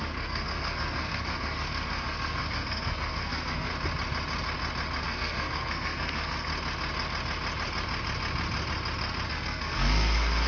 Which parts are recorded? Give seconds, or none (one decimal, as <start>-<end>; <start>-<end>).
3.7-5.0; 6.5-9.3